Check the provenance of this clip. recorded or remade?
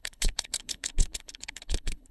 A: remade